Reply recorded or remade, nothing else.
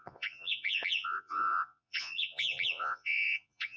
remade